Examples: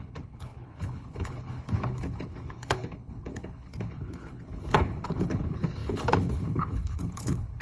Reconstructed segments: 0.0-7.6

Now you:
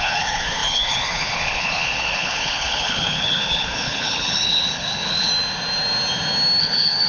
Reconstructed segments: 0.0-5.3; 6.6-7.1